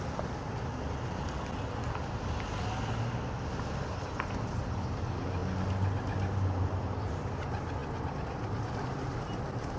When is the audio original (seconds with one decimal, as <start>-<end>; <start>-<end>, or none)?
0.0-9.8